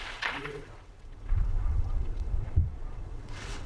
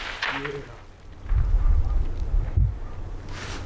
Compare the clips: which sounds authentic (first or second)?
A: second